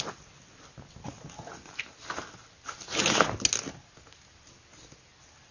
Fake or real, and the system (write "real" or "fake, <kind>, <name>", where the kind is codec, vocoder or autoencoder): real